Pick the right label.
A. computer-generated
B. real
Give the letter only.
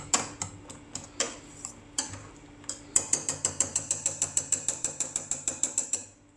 A